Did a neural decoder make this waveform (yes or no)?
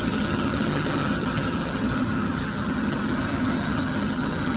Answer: yes